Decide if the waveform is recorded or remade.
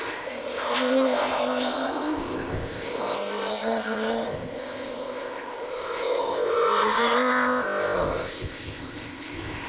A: remade